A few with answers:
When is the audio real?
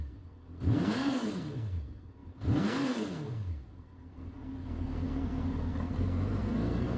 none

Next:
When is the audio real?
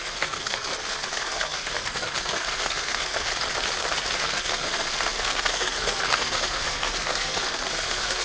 3.3-4.2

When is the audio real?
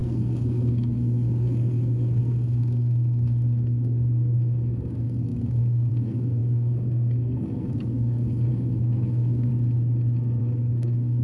9.5-10.4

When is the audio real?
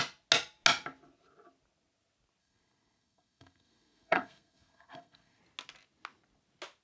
0.0-2.4; 5.4-6.8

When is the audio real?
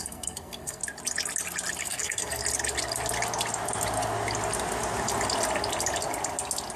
0.8-1.8; 2.4-6.8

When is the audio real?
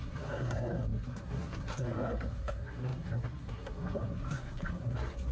none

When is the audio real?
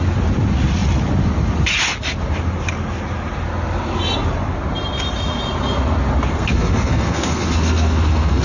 0.0-6.3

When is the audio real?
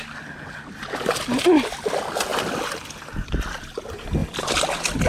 0.0-5.1